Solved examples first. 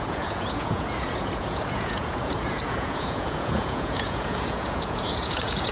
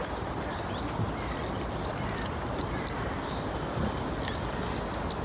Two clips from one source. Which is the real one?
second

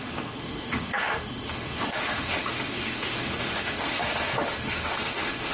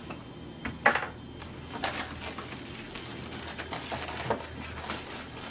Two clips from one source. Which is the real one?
second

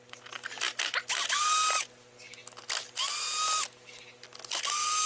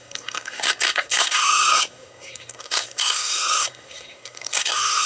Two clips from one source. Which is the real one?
first